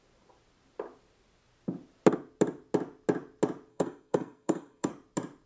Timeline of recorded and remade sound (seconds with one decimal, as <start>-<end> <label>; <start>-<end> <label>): 0.0-3.7 recorded; 3.7-4.9 remade; 4.9-5.5 recorded